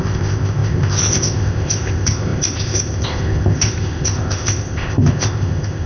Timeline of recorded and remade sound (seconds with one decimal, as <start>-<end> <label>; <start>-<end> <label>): 0.0-5.9 remade